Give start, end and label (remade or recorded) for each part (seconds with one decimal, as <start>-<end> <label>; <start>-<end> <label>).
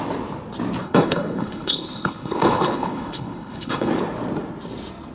0.0-0.8 recorded; 0.8-3.9 remade; 3.9-5.1 recorded